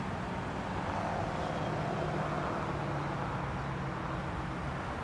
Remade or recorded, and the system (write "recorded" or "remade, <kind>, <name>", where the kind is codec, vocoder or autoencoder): recorded